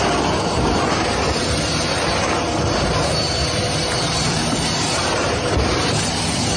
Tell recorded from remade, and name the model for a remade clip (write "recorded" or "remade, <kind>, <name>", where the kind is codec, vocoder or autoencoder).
recorded